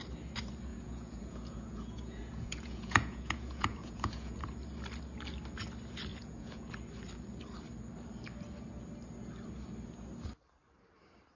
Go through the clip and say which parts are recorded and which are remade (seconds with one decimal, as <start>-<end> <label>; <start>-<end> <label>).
0.0-0.7 recorded; 0.7-4.5 remade; 4.5-6.1 recorded; 6.1-6.7 remade; 6.7-11.4 recorded